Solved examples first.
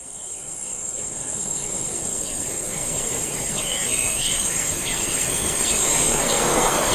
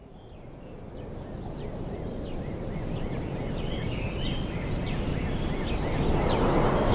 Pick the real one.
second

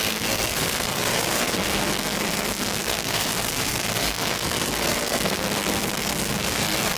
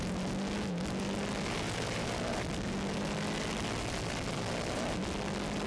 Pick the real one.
second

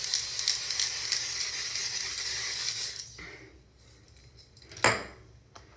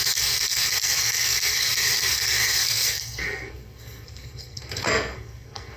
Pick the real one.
first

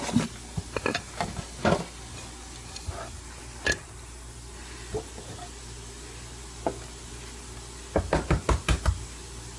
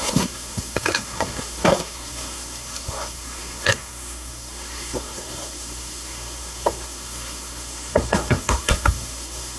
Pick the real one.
first